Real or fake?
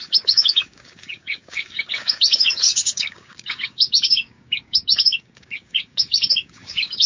fake